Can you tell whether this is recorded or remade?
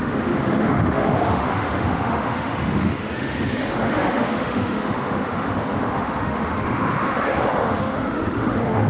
remade